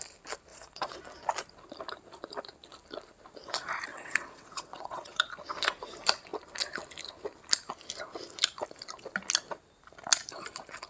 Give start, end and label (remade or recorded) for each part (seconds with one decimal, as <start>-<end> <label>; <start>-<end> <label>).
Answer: 0.0-0.5 recorded; 0.5-1.0 remade; 1.0-3.9 recorded; 3.9-5.3 remade; 5.3-10.9 recorded